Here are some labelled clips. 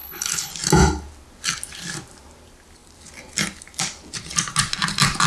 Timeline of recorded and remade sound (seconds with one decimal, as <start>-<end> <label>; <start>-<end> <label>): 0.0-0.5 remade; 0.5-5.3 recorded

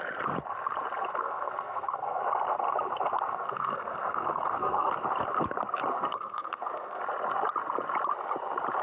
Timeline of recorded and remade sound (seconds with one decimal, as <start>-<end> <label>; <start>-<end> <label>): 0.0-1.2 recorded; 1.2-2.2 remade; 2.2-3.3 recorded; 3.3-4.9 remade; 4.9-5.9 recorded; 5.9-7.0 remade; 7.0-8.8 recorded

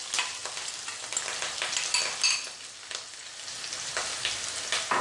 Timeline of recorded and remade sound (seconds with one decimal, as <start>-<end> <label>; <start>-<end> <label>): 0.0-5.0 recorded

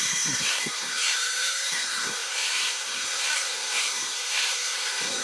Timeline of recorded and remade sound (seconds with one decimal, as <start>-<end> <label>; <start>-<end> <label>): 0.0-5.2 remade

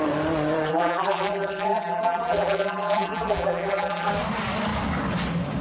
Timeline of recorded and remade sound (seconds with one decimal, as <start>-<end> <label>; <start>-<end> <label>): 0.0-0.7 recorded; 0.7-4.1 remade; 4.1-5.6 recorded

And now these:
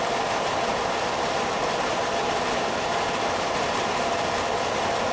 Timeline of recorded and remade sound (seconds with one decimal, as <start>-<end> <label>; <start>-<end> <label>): 0.0-0.7 recorded; 0.7-3.8 remade; 3.8-5.1 recorded

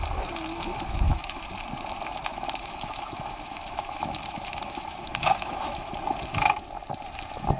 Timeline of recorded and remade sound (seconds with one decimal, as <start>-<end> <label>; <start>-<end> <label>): 0.0-0.5 recorded; 0.5-1.5 remade; 1.5-2.3 recorded; 2.3-5.9 remade; 5.9-7.6 recorded